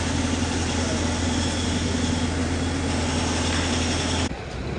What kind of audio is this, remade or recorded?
recorded